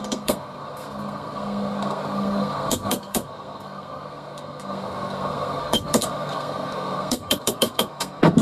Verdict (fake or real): fake